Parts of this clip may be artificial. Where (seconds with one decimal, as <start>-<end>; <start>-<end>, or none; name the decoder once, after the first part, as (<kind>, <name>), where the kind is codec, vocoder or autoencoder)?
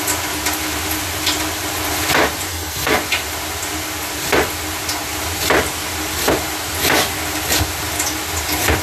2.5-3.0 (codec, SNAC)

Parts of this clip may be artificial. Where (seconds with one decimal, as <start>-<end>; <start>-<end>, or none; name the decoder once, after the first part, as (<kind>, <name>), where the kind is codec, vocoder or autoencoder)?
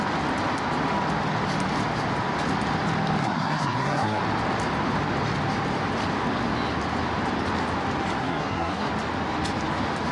3.2-4.2 (codec, SNAC); 8.2-8.9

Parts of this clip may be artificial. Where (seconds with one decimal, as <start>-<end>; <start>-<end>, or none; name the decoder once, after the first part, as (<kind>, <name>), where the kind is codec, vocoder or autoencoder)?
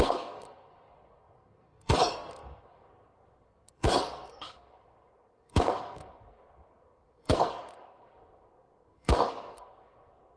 0.0-10.4 (codec, SNAC)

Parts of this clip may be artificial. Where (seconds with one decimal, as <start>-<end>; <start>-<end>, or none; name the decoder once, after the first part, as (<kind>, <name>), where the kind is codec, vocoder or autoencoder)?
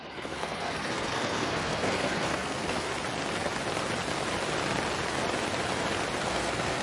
0.0-2.9 (codec, SNAC); 6.2-6.8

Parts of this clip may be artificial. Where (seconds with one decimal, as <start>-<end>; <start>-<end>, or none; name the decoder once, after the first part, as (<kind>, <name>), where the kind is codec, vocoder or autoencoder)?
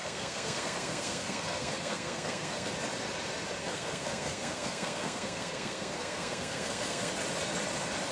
0.0-2.7 (codec, SNAC); 3.6-7.1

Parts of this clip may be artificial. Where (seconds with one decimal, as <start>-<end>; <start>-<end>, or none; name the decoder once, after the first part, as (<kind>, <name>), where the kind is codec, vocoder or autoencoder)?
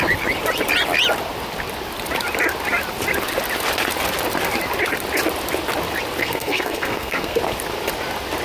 6.2-7.4 (codec, SNAC)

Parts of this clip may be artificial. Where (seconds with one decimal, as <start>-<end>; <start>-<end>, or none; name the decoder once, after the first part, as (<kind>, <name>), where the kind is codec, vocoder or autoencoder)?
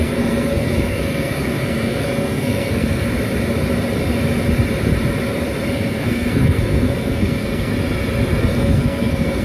0.0-3.1 (codec, SNAC); 5.7-7.7; 8.4-9.4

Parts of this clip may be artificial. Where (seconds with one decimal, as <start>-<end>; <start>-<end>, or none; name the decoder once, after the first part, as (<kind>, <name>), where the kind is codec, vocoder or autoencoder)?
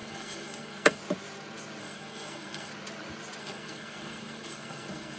0.0-1.0 (codec, SNAC); 1.8-2.7; 3.4-5.2